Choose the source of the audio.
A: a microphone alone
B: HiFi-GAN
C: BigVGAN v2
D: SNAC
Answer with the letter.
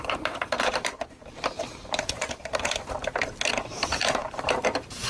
C